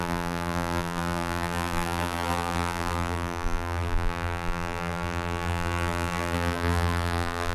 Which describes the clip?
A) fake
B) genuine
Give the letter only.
A